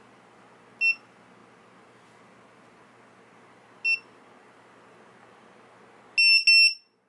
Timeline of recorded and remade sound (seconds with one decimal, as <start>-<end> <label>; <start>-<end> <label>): 0.0-7.1 recorded